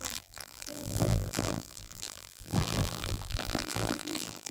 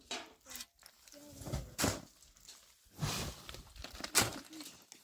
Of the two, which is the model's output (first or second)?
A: first